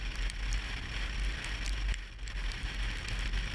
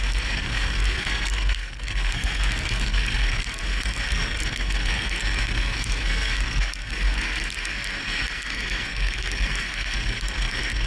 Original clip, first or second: first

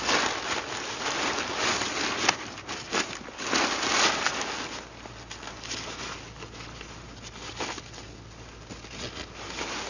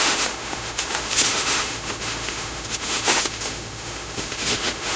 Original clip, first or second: first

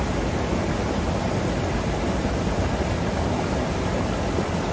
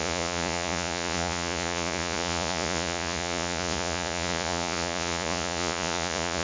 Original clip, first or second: first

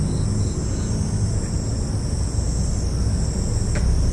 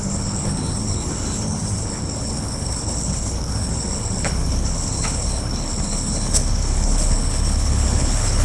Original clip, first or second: first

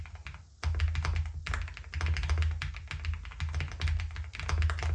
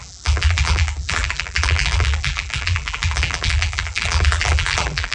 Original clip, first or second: first